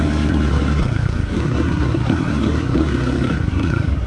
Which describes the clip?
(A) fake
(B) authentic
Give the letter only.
A